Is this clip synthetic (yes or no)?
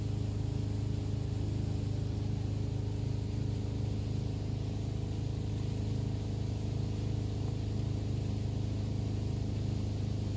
no